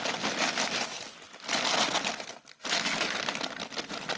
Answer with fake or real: real